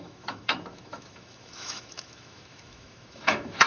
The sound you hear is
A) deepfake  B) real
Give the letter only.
A